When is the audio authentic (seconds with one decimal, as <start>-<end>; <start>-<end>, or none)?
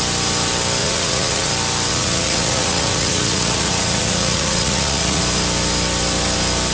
0.0-0.8; 1.5-1.9; 5.2-6.7